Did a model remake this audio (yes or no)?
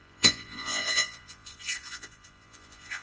yes